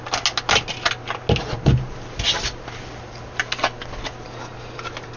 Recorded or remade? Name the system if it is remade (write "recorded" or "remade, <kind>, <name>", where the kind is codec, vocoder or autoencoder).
recorded